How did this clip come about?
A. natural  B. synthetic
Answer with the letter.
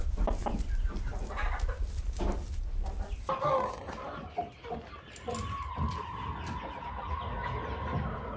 A